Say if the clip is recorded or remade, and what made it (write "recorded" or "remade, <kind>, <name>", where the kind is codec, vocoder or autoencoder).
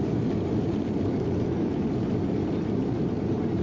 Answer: recorded